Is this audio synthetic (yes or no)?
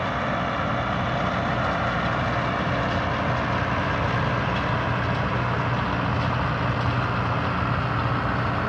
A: no